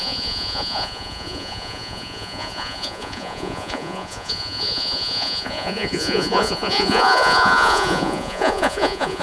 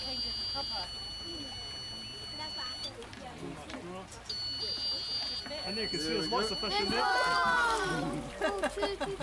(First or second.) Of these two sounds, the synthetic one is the first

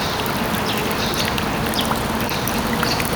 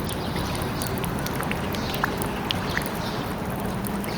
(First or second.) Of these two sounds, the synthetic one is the second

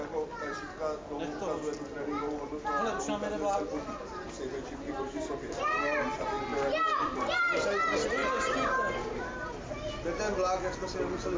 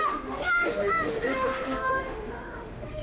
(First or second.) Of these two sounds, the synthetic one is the second